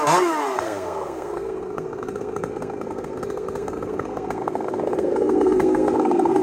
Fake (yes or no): yes